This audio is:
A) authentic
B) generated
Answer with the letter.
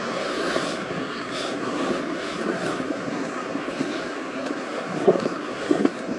B